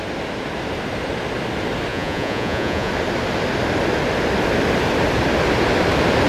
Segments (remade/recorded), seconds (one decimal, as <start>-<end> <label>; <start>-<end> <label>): 0.0-1.9 recorded; 1.9-2.9 remade; 2.9-6.3 recorded